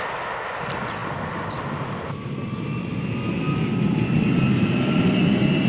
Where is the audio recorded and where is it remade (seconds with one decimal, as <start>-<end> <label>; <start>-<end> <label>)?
0.0-5.7 recorded